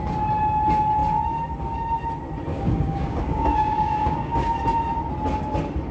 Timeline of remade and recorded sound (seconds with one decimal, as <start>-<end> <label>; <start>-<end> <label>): 0.0-2.5 recorded; 2.5-4.6 remade; 4.6-5.9 recorded